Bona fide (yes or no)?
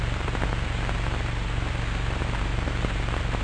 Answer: yes